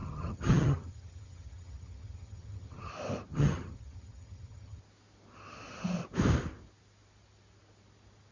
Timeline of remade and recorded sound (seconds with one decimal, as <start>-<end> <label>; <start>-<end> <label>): 0.0-2.9 remade; 2.9-3.3 recorded; 3.3-4.8 remade; 4.8-8.3 recorded